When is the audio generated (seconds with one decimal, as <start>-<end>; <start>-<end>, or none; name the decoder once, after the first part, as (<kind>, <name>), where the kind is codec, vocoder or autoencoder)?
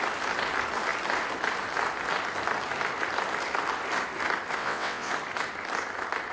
4.6-5.1 (vocoder, WaveNeXt)